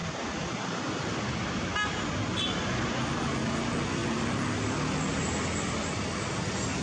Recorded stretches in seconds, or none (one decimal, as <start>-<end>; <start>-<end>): 0.0-6.8